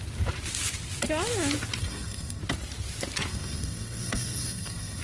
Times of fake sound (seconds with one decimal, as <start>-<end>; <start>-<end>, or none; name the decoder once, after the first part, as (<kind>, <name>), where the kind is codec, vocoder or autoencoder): 1.8-2.4 (codec, SNAC); 3.3-5.0